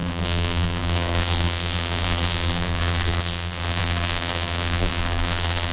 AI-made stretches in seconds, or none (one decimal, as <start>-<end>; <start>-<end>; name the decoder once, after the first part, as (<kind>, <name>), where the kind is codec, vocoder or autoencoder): 0.0-5.7 (vocoder, BigVGAN v2)